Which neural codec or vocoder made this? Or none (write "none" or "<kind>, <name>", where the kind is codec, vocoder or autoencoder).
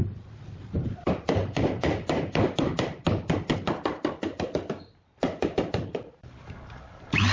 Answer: vocoder, BigVGAN v2